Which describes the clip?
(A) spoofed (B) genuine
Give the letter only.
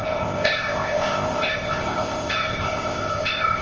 A